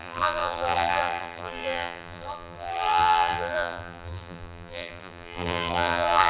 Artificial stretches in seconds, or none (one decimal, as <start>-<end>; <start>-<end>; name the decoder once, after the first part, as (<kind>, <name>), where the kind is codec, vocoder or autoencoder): 0.0-6.3 (vocoder, BigVGAN v2)